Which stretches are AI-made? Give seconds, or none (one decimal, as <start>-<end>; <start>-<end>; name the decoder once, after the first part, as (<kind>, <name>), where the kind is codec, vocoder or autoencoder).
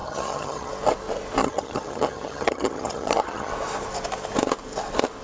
0.0-0.7 (vocoder, HiFi-GAN); 1.4-3.5